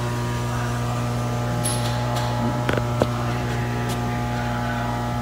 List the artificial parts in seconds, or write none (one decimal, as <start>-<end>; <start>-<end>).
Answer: 1.7-3.6